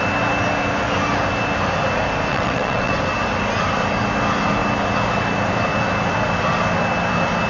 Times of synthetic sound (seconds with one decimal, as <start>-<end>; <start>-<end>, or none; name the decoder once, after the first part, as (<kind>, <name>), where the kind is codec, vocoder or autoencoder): 2.3-2.9 (vocoder, WaveNeXt)